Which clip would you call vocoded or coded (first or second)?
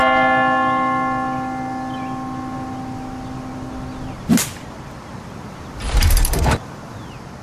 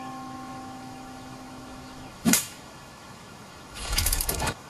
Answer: second